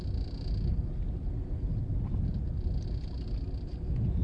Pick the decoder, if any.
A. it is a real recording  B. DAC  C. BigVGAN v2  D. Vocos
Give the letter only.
A